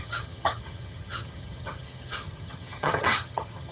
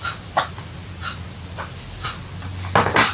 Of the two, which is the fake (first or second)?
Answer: first